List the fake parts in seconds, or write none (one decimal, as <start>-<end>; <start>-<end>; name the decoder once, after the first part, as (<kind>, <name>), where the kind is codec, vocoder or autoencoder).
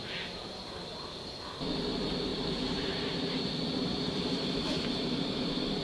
0.9-1.5 (vocoder, BigVGAN v2); 2.3-5.8